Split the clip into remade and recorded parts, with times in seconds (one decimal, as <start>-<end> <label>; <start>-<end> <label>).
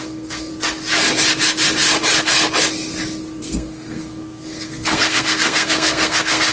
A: 0.0-0.5 remade; 0.5-3.4 recorded; 3.4-6.5 remade